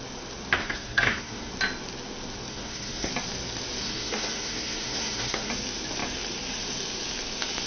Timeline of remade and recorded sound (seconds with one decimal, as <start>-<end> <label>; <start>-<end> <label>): 0.0-0.6 recorded; 0.6-1.5 remade; 1.5-2.5 recorded; 2.5-3.1 remade; 3.1-3.8 recorded; 3.8-5.5 remade; 5.5-7.7 recorded